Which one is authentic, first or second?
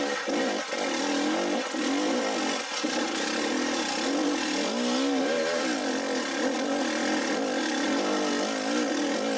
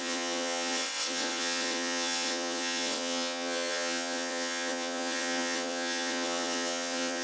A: first